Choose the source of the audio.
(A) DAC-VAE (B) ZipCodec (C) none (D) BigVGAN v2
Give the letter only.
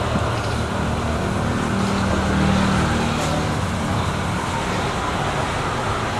C